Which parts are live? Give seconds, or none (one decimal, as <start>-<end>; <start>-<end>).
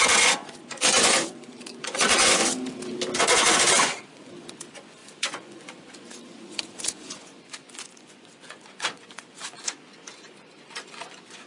2.4-3.2